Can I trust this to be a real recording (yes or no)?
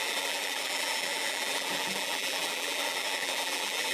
no